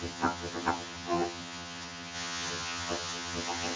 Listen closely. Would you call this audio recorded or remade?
remade